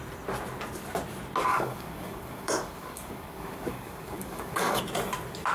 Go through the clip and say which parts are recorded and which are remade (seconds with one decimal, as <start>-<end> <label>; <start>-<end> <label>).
0.0-1.5 recorded; 1.5-4.8 remade; 4.8-5.5 recorded